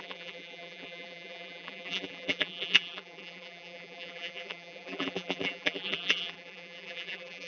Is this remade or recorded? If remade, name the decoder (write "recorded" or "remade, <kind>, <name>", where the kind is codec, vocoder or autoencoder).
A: remade, vocoder, BigVGAN v2